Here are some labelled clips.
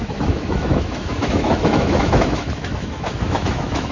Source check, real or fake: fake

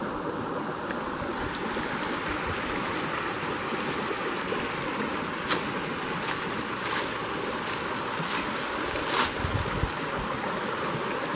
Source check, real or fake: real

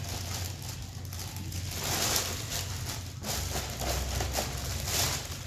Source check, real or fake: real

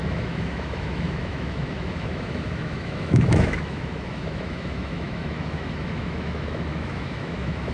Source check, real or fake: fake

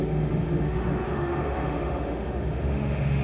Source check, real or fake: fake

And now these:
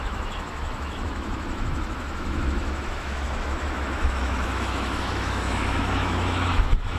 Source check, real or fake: fake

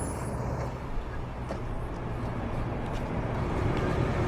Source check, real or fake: real